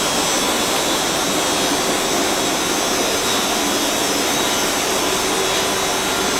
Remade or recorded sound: recorded